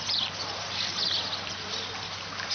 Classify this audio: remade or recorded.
recorded